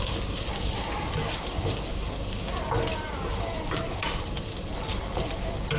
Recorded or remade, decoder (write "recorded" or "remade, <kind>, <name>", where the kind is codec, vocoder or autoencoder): recorded